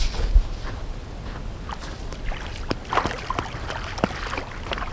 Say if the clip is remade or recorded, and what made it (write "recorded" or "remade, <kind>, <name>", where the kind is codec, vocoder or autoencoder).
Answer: recorded